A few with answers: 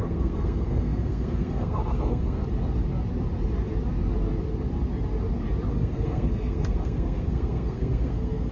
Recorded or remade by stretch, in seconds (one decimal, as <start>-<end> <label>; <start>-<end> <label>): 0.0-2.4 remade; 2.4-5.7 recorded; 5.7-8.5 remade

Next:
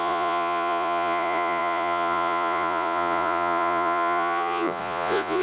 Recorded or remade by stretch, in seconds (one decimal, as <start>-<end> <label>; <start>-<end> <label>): 0.0-5.4 remade

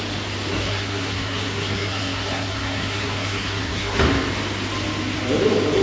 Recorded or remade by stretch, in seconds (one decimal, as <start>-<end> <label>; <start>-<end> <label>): 0.0-0.5 recorded; 0.5-4.0 remade; 4.0-5.8 recorded

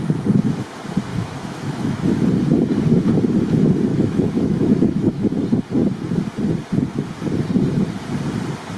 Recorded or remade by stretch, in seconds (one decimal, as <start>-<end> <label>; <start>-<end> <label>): 0.0-1.1 recorded; 1.1-2.2 remade; 2.2-3.9 recorded; 3.9-5.3 remade; 5.3-8.8 recorded